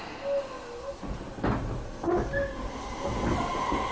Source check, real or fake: real